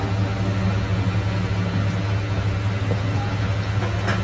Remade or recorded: recorded